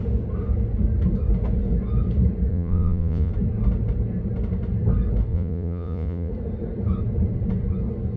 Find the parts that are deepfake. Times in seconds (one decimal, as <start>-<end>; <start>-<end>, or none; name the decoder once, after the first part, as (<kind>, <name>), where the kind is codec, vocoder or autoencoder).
2.5-3.3 (vocoder, Vocos); 5.3-6.3